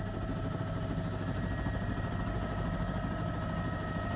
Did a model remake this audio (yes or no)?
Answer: no